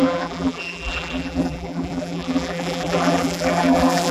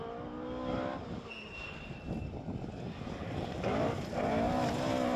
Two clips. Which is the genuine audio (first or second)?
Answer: second